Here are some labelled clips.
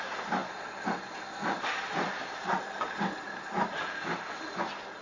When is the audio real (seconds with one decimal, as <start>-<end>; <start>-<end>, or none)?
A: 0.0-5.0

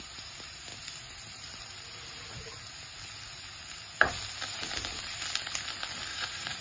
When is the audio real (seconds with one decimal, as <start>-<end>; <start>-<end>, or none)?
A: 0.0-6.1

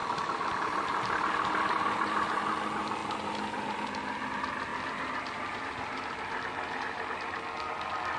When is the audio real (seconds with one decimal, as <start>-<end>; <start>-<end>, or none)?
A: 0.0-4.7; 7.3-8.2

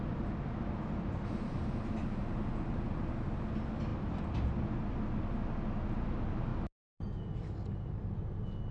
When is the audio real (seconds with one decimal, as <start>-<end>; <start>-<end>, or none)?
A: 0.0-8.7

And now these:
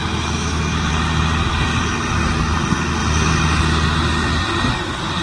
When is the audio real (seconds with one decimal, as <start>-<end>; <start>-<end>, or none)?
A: 0.9-5.2

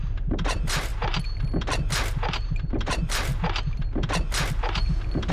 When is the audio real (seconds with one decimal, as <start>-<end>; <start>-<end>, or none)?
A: 0.9-2.3; 3.3-4.5